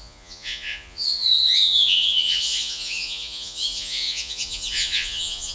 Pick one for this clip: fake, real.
fake